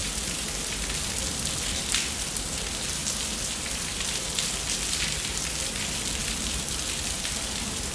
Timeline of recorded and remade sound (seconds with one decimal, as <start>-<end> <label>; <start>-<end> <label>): 0.0-7.9 recorded